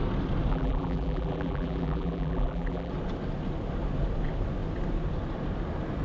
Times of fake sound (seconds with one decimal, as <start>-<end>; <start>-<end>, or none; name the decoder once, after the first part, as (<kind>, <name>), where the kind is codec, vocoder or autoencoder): 0.5-2.9 (vocoder, BigVGAN v2)